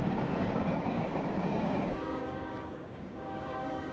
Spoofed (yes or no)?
yes